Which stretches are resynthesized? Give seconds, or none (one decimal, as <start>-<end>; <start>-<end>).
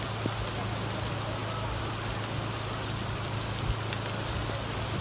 none